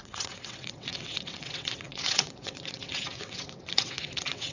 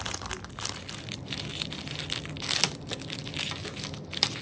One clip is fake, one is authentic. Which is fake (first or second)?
first